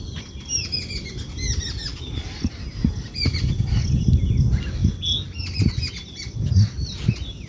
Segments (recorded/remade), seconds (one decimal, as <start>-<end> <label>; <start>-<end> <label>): 0.0-1.9 recorded; 1.9-4.1 remade; 4.1-7.5 recorded